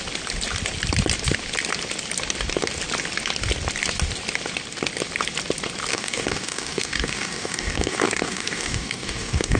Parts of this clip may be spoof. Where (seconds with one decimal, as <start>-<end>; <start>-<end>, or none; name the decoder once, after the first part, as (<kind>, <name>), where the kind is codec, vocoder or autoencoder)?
5.9-9.6 (codec, DAC)